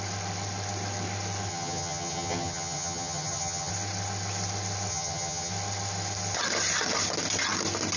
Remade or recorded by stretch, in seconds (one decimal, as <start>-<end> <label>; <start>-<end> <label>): 0.0-1.5 recorded; 1.5-3.7 remade; 3.7-4.9 recorded; 4.9-5.5 remade; 5.5-8.0 recorded